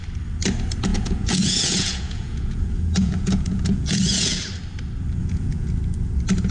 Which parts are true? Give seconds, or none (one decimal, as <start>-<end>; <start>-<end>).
0.0-0.9; 4.4-5.2; 5.7-6.5